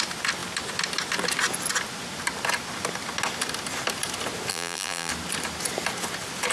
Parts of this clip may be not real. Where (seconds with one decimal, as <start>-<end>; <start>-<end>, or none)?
4.5-5.1